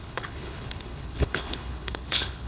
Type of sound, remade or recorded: remade